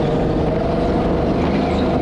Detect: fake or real real